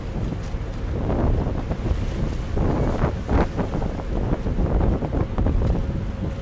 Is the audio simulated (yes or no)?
no